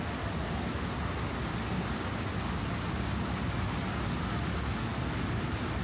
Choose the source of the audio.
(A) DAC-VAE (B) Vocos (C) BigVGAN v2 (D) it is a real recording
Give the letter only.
D